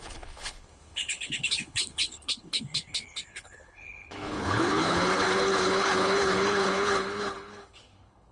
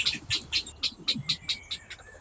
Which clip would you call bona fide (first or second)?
second